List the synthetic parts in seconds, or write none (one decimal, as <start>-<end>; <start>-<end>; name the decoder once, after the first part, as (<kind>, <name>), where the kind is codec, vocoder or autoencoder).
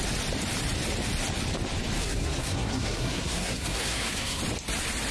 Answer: 2.0-4.4 (codec, SNAC)